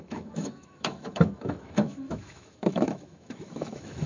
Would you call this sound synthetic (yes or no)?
yes